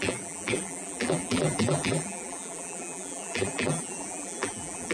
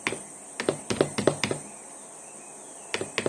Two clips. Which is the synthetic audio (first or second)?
first